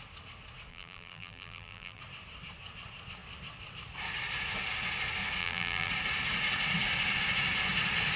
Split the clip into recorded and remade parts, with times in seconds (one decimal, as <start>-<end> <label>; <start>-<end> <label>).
0.0-0.7 recorded; 0.7-2.0 remade; 2.0-5.4 recorded; 5.4-5.9 remade; 5.9-8.2 recorded